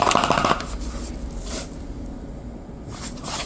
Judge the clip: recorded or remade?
recorded